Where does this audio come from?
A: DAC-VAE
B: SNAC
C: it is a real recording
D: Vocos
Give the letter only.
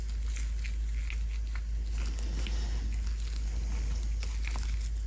C